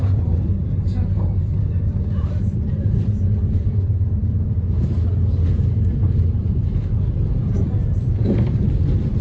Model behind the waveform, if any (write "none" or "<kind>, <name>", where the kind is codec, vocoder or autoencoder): vocoder, BigVGAN v2